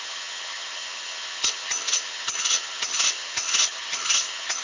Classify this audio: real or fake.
fake